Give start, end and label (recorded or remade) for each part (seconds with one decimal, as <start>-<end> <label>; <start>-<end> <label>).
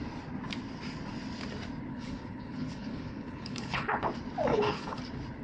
0.0-1.9 recorded; 1.9-4.0 remade; 4.0-4.5 recorded; 4.5-5.0 remade; 5.0-5.4 recorded